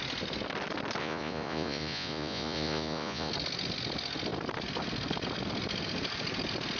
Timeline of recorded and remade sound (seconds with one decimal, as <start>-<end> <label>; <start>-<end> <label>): 0.0-1.0 recorded; 1.0-3.3 remade; 3.3-6.8 recorded